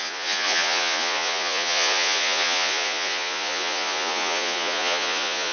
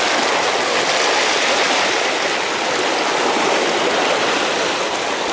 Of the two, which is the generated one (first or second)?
first